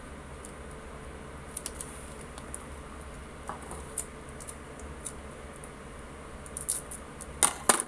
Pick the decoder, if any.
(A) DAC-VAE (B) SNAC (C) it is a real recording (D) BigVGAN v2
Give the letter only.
C